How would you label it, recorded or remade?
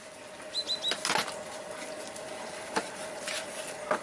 recorded